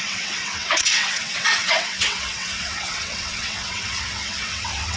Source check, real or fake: fake